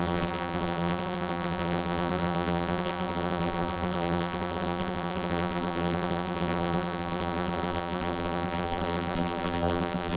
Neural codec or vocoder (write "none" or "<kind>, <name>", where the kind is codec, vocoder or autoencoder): vocoder, BigVGAN v2